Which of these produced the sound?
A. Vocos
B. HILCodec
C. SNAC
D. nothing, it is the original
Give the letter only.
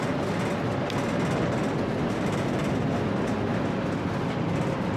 D